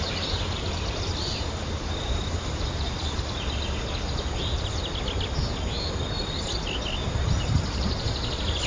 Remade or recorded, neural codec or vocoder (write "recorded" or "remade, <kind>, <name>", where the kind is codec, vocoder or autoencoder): recorded